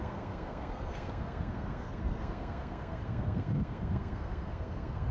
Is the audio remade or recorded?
remade